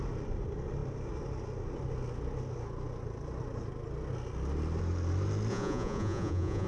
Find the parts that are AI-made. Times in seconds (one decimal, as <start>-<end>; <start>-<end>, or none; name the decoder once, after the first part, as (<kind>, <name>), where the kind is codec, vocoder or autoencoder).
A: 5.5-6.7 (vocoder, Vocos)